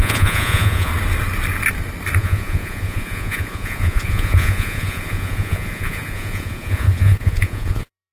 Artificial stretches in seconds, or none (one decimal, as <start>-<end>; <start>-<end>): 0.0-0.9; 2.2-8.1